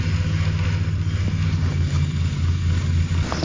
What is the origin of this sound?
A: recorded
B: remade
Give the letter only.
A